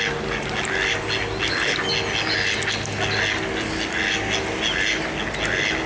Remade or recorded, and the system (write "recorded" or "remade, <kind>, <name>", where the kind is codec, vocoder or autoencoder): recorded